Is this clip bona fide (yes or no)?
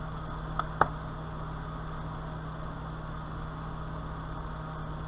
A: yes